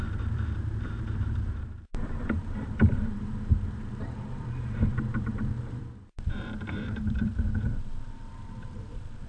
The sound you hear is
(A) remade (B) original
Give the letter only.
A